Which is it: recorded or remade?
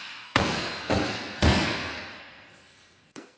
remade